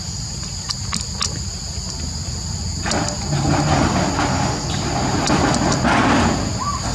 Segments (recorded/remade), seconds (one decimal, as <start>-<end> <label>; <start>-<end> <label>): 0.0-6.9 recorded